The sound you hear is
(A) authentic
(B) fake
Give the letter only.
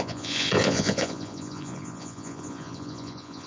B